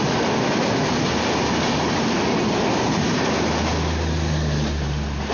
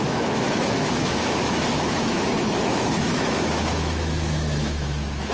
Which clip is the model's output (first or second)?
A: second